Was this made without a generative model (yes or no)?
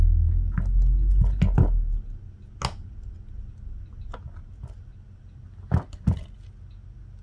yes